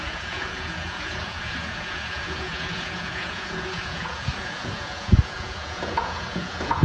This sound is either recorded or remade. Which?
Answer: remade